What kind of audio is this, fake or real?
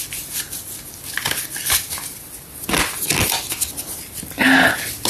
real